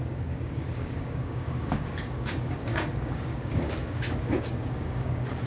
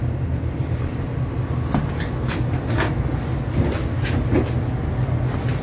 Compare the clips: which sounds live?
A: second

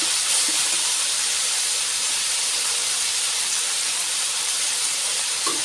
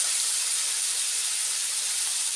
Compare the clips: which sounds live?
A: second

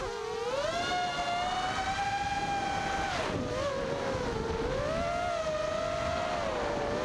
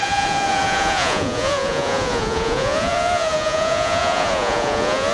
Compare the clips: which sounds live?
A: first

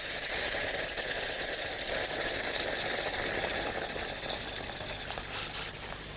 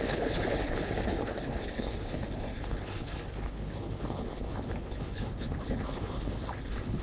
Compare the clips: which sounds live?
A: first